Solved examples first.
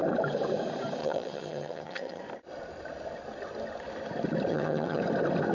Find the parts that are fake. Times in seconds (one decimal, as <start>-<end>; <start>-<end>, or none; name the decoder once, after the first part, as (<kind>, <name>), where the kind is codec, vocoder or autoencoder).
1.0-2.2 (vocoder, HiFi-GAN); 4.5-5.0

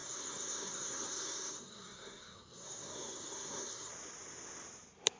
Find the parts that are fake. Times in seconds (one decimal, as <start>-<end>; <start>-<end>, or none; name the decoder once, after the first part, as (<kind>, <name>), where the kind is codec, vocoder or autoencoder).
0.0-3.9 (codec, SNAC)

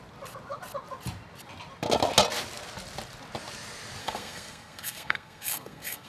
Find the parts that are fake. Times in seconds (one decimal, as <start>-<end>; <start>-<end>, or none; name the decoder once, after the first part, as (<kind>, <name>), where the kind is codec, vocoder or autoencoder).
4.0-6.1 (codec, SNAC)

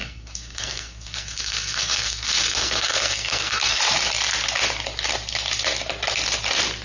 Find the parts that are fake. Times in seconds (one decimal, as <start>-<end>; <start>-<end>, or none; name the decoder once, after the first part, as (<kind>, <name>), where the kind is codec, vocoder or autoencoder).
0.0-3.8 (codec, SNAC)

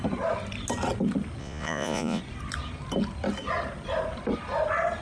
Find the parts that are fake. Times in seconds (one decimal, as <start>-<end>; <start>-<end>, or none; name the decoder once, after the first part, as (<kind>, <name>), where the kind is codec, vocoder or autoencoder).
1.4-2.2 (vocoder, Vocos)